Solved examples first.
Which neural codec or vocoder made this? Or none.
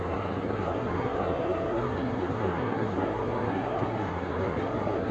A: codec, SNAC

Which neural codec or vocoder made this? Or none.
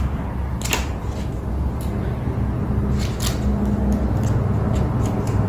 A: none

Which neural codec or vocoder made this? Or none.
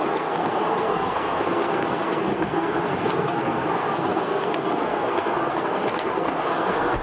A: codec, SNAC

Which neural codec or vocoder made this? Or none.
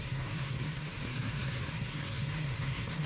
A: codec, SNAC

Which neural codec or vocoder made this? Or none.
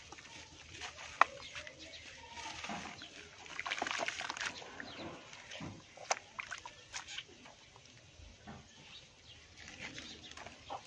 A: none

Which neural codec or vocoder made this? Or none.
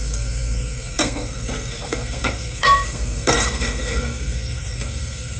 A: codec, SNAC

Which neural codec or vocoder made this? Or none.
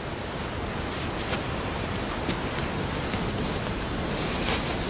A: none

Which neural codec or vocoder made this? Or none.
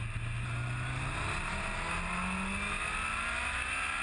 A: none